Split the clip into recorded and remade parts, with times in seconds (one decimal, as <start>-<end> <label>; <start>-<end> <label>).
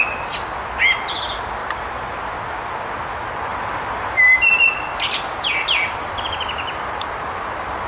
0.0-1.6 recorded; 1.6-2.2 remade; 2.2-3.5 recorded; 3.5-4.2 remade; 4.2-7.9 recorded